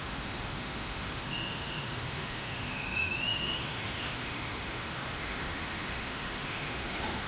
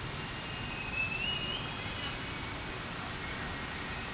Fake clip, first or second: first